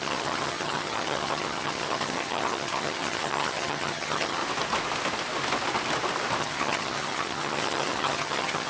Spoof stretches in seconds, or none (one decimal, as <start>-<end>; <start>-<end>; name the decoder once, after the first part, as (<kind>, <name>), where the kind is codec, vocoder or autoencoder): 0.0-4.4 (vocoder, HiFi-GAN); 6.4-8.7